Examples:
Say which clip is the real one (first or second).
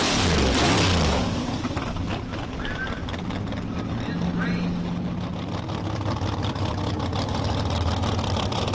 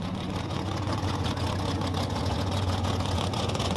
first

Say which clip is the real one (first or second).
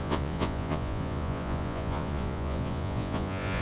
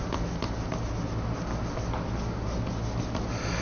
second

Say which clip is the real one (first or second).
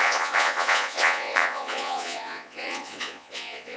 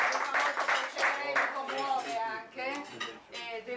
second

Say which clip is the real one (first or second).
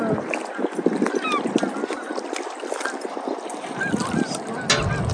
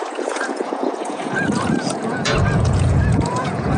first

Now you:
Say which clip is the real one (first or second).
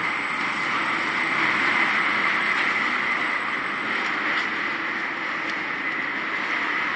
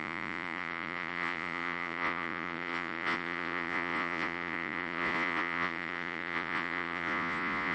first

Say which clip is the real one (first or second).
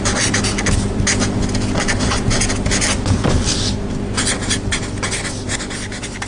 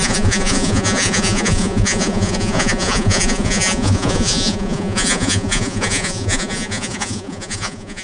first